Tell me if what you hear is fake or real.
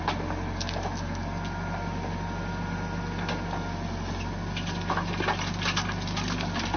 real